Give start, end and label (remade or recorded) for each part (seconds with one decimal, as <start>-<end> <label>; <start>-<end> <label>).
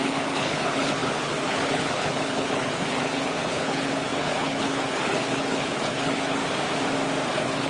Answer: 0.0-6.4 remade; 6.4-7.3 recorded; 7.3-7.7 remade